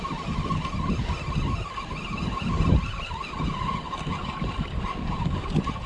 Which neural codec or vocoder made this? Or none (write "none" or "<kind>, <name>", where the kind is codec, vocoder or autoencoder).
none